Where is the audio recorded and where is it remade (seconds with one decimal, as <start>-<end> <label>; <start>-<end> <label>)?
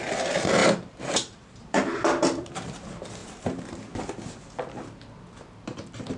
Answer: 0.0-0.6 recorded; 0.6-2.5 remade; 2.5-3.2 recorded; 3.2-3.7 remade; 3.7-6.2 recorded